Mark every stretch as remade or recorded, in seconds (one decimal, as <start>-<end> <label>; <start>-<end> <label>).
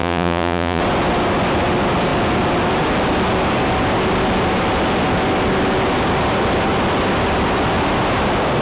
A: 0.0-0.8 remade; 0.8-8.6 recorded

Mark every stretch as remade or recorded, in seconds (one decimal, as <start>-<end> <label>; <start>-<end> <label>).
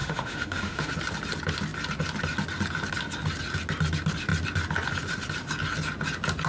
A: 0.0-0.9 remade; 0.9-6.5 recorded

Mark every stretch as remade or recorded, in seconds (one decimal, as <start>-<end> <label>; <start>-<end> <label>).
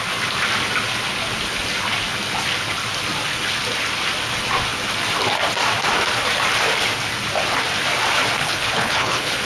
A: 0.0-8.4 recorded; 8.4-9.4 remade